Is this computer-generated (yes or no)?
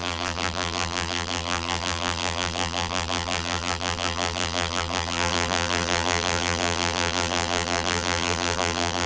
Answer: yes